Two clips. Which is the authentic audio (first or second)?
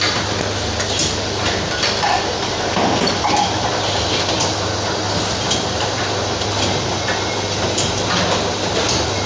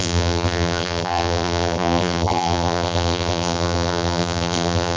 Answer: first